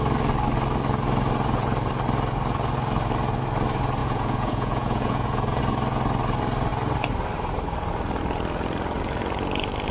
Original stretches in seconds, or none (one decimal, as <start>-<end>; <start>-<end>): 0.0-4.0; 5.6-9.9